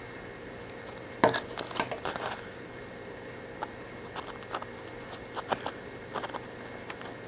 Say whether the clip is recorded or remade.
recorded